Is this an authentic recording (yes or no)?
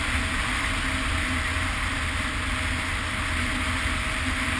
yes